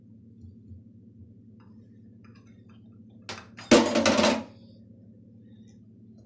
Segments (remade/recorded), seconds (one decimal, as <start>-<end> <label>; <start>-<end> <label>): 0.0-6.3 recorded